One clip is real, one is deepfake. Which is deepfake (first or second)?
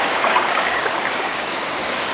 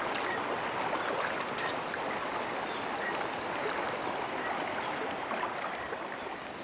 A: first